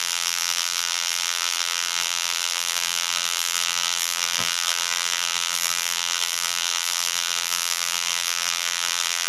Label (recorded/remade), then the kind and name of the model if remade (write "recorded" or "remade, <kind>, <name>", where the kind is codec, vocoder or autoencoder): remade, vocoder, BigVGAN v2